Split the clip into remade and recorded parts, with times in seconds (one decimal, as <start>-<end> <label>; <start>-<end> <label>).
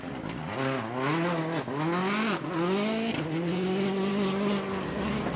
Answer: 0.0-5.4 recorded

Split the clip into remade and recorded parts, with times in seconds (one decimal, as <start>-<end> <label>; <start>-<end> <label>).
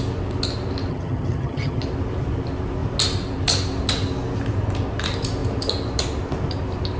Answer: 0.0-0.9 recorded; 0.9-1.8 remade; 1.8-7.0 recorded